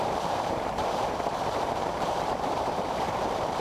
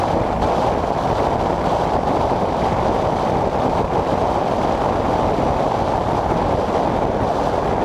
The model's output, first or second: first